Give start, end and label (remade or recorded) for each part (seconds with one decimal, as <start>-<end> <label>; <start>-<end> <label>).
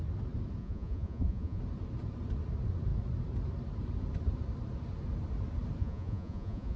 0.0-0.6 recorded; 0.6-1.6 remade; 1.6-5.8 recorded; 5.8-6.8 remade